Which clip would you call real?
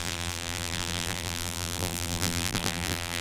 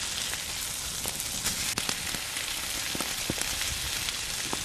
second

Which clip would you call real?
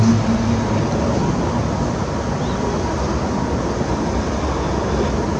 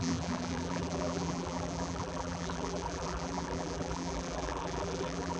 first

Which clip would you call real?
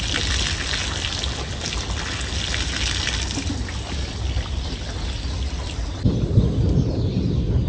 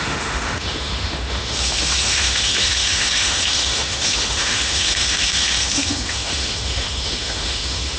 first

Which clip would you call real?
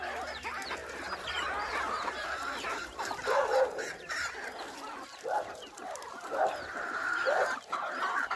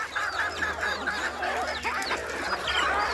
second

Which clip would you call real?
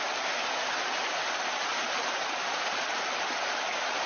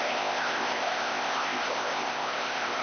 first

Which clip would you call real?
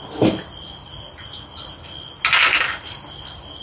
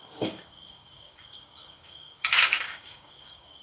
first